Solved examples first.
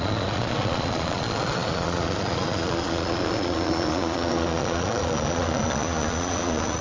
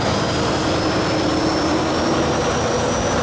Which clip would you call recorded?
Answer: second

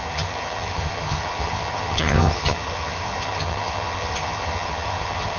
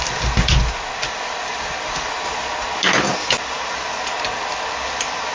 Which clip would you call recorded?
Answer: second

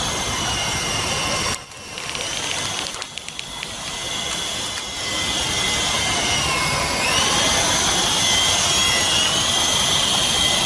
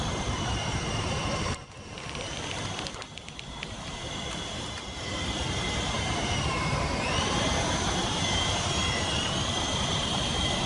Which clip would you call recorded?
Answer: first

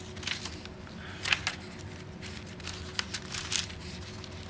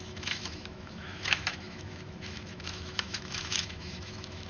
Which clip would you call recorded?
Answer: first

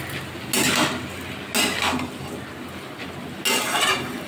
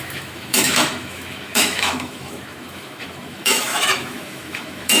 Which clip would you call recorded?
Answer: first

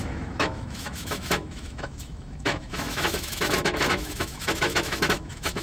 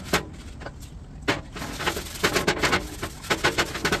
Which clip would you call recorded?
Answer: second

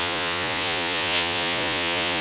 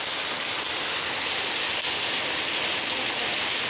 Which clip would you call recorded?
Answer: second